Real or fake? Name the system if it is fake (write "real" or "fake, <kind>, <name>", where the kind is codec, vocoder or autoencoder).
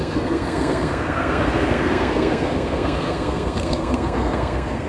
fake, codec, SNAC